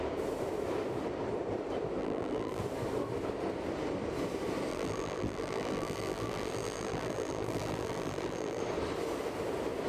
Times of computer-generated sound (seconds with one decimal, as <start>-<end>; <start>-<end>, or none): 2.0-2.6; 4.7-8.6